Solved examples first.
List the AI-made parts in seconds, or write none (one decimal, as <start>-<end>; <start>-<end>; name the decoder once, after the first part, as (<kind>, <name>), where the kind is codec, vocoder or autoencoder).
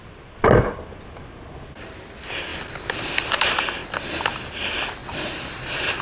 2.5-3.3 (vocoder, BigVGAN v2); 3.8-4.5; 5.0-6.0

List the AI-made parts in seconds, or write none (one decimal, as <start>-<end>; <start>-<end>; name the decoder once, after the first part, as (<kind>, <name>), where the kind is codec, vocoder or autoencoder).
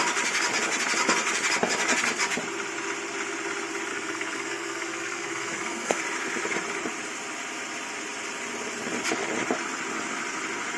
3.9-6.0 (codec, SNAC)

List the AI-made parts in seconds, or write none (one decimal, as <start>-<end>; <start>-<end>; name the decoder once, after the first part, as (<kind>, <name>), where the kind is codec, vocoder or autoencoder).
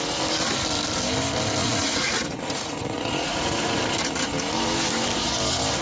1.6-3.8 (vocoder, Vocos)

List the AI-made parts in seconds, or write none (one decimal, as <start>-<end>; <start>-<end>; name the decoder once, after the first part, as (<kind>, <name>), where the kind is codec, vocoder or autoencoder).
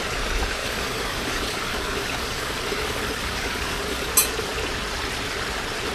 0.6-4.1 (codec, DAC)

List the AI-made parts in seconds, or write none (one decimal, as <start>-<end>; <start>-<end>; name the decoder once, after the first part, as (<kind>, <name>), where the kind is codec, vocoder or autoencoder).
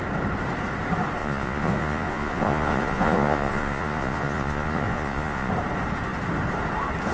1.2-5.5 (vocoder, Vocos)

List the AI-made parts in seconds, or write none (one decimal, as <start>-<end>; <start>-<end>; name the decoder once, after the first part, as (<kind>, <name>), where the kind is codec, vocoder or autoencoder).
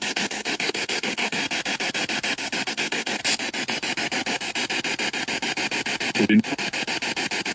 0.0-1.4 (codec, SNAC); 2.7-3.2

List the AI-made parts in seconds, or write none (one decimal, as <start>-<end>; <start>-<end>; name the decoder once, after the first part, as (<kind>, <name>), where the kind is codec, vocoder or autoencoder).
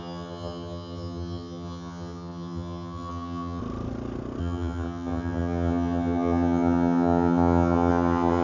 0.0-3.6 (vocoder, HiFi-GAN); 4.4-8.4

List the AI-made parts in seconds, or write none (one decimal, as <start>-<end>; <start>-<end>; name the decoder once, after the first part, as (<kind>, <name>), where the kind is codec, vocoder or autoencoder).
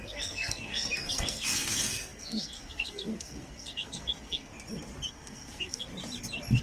0.0-4.5 (codec, SNAC); 5.1-5.9